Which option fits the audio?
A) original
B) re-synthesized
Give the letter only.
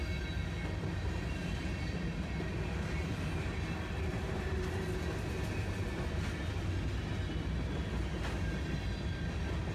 A